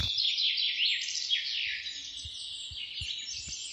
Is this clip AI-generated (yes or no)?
no